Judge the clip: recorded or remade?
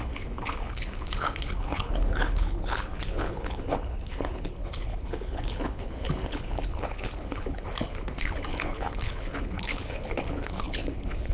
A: remade